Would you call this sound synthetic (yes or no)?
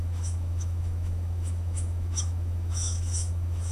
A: yes